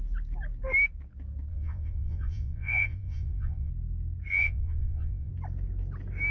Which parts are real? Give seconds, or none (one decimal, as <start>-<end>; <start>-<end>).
0.0-1.5; 3.7-4.3; 5.3-6.3

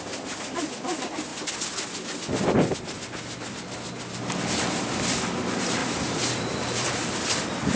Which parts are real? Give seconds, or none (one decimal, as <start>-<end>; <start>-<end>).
0.0-5.8; 6.9-7.8

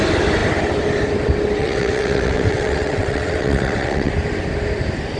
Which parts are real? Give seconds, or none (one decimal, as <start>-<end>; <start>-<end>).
0.0-1.6; 4.1-5.2

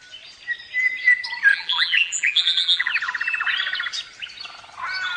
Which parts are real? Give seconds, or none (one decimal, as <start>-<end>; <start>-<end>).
0.0-1.5; 2.9-5.2

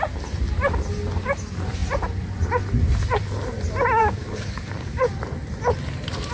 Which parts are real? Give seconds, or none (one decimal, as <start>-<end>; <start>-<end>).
0.0-4.0; 5.0-6.3

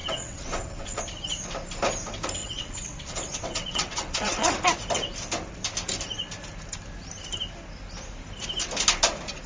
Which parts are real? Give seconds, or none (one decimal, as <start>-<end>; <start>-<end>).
1.0-2.4; 4.5-9.5